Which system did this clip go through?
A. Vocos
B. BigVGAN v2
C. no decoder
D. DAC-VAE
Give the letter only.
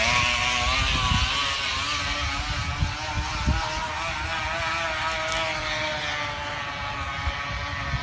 C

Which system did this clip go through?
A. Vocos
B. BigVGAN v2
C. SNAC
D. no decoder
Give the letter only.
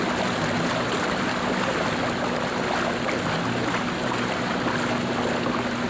D